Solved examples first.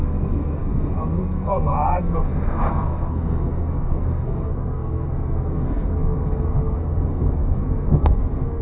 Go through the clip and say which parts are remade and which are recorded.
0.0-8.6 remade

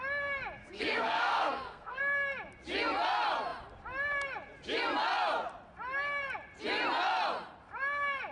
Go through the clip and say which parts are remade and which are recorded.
0.0-0.6 recorded; 0.6-2.0 remade; 2.0-8.3 recorded

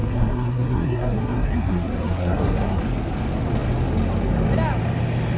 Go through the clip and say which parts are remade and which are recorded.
0.0-2.8 remade; 2.8-5.4 recorded